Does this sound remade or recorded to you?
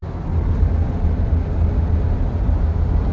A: recorded